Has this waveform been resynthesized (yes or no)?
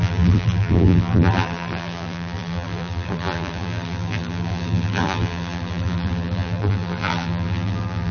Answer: yes